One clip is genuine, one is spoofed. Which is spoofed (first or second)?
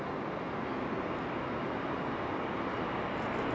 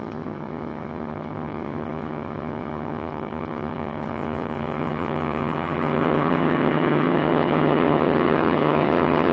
second